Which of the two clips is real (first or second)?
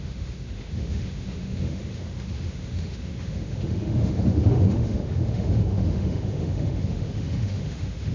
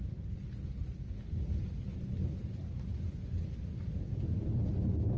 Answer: second